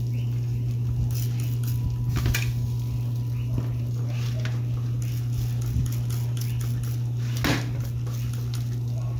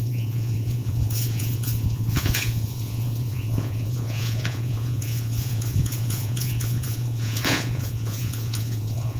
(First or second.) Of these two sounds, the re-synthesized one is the second